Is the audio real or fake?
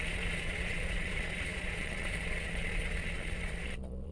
fake